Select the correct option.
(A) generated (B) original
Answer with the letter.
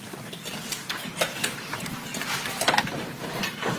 A